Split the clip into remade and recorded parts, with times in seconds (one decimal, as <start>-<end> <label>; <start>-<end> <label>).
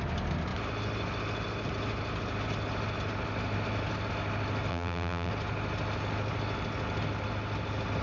0.0-4.7 recorded; 4.7-5.3 remade; 5.3-8.0 recorded